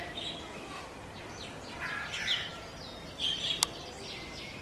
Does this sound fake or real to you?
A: real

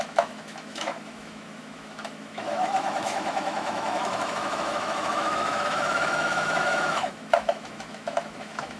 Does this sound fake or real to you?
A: fake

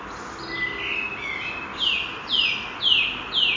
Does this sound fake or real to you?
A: real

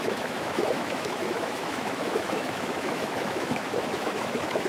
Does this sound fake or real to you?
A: fake